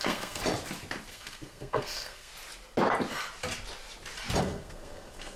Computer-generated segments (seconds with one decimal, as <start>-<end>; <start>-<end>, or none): 0.0-0.4; 1.1-2.3; 4.4-5.4